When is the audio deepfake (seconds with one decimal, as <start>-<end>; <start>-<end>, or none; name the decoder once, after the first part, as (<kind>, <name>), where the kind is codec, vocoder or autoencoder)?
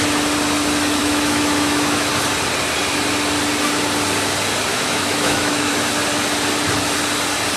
1.0-2.1 (autoencoder, DAC-VAE); 4.7-5.7